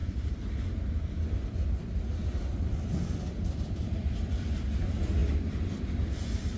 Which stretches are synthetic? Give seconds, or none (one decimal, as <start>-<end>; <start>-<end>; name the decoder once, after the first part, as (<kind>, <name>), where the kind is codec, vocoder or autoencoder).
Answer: 2.2-4.5 (vocoder, BigVGAN v2); 5.2-6.6